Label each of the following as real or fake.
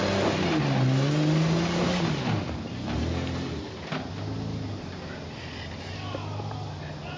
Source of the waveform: real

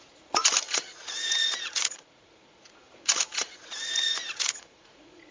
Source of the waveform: fake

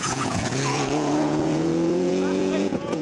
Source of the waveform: fake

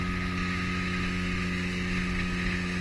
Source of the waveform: real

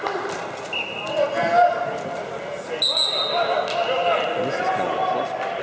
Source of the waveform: real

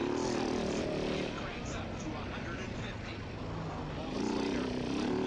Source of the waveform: real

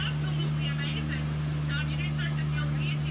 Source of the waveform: real